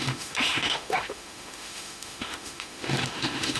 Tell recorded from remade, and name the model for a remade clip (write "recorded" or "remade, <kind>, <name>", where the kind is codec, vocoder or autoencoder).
remade, autoencoder, DAC-VAE